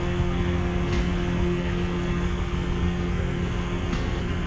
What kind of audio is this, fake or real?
fake